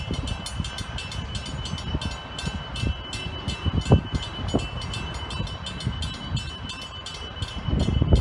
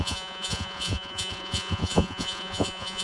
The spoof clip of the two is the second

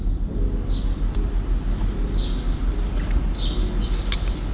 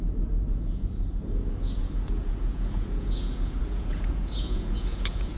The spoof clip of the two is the second